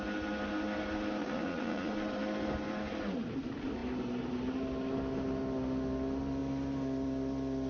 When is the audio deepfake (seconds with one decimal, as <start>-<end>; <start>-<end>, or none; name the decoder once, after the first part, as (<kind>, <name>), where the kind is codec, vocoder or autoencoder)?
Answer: 1.2-1.9 (vocoder, Vocos)